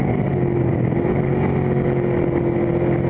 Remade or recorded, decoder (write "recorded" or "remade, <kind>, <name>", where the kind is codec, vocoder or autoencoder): recorded